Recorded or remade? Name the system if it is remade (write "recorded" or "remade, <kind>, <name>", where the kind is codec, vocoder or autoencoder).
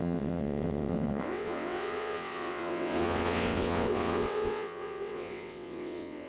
remade, vocoder, WaveNeXt